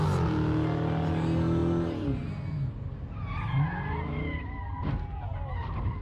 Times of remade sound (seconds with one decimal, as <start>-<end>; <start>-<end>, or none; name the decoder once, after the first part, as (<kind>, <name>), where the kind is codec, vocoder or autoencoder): none